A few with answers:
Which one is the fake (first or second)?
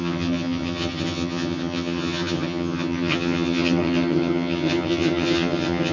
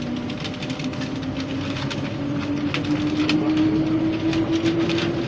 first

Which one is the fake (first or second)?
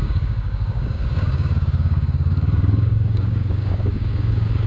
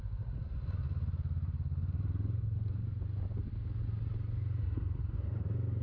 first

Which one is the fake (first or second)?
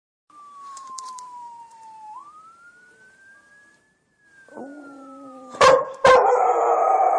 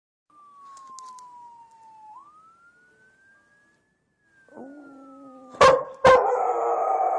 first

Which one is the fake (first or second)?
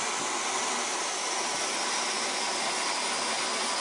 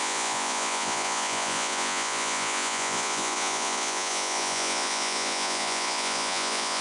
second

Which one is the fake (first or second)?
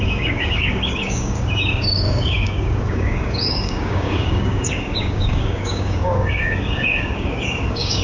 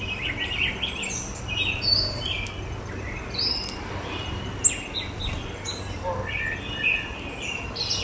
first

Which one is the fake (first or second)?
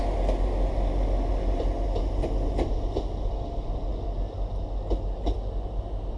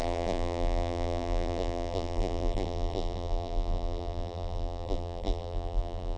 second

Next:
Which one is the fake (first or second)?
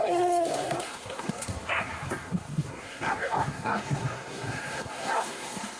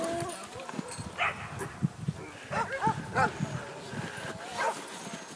first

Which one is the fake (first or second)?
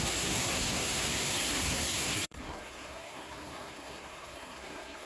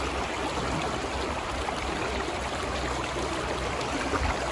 first